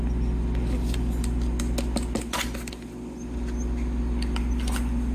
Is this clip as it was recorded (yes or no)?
yes